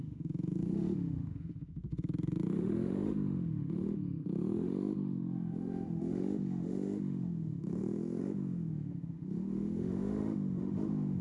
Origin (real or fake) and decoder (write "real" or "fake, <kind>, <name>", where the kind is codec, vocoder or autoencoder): fake, autoencoder, DAC-VAE